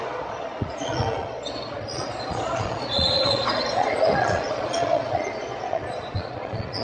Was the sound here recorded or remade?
remade